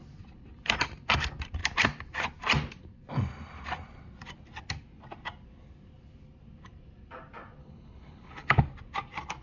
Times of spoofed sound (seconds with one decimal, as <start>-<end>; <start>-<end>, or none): 7.6-8.6